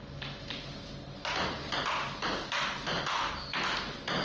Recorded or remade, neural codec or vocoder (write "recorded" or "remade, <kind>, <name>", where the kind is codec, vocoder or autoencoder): recorded